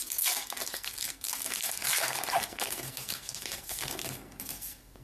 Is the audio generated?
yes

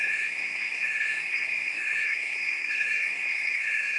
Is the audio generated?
yes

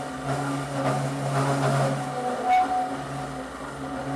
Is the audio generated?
no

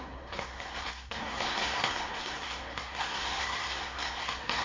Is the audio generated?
yes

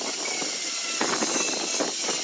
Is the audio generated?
no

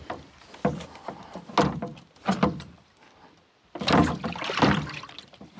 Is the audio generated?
no